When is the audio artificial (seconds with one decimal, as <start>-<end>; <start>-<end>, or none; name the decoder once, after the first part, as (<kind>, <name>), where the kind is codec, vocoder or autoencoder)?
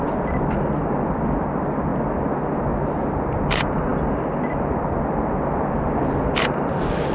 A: none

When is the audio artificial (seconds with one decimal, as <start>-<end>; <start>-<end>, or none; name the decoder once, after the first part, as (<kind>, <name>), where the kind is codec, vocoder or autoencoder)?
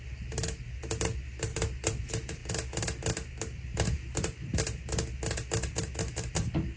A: none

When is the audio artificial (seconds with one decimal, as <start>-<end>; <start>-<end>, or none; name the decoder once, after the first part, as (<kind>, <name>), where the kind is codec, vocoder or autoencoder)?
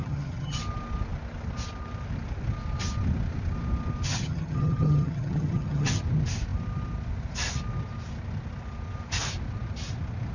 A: 0.0-0.6 (vocoder, HiFi-GAN); 4.1-6.0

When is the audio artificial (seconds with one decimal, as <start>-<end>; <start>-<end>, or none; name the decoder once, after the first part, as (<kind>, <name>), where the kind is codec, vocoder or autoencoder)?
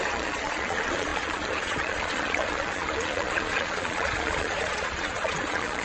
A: 0.0-5.8 (vocoder, Vocos)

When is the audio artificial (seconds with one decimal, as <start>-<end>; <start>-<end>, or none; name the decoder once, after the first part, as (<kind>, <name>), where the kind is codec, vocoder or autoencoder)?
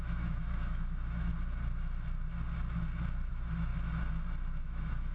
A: 0.0-1.3 (autoencoder, DAC-VAE); 3.3-3.7; 4.6-5.1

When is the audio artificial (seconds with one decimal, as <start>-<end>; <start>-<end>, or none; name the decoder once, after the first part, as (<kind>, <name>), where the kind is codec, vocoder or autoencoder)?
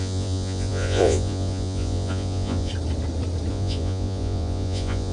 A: 0.0-2.7 (vocoder, Vocos); 3.5-5.1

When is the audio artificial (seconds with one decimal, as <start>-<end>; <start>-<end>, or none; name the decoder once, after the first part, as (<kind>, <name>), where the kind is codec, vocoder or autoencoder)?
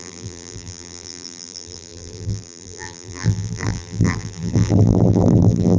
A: 0.0-5.8 (vocoder, BigVGAN v2)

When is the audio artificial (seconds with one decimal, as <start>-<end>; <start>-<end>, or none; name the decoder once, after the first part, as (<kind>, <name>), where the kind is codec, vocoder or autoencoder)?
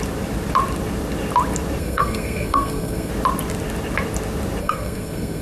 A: 1.8-3.1 (codec, SNAC); 4.6-5.4